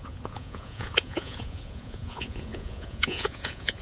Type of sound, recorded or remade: remade